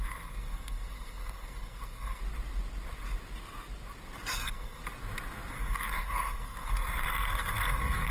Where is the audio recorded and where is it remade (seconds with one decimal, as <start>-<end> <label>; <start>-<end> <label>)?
0.0-2.2 remade; 2.2-4.3 recorded; 4.3-4.8 remade; 4.8-5.5 recorded; 5.5-8.1 remade